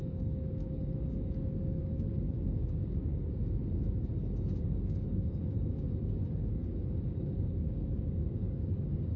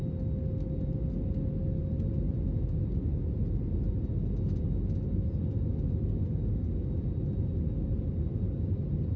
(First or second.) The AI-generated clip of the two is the first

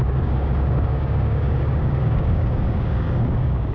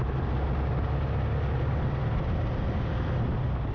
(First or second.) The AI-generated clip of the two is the first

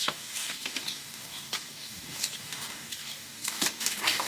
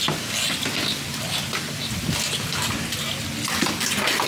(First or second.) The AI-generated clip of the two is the first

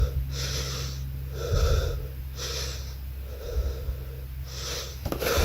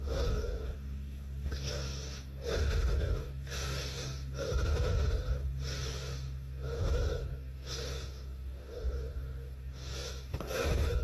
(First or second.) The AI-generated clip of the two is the second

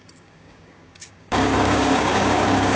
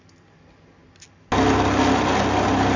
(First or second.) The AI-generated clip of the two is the first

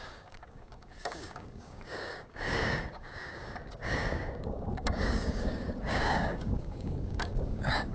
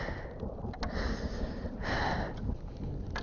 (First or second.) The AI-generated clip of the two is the first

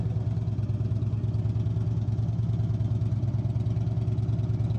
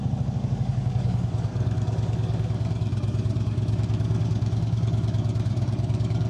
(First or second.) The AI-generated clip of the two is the second